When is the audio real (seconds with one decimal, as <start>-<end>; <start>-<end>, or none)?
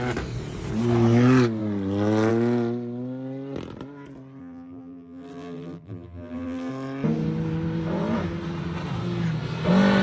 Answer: 0.0-4.4; 6.7-10.0